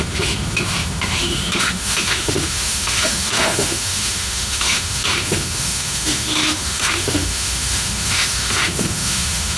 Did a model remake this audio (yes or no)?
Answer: yes